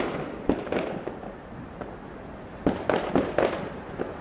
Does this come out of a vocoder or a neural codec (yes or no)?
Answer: no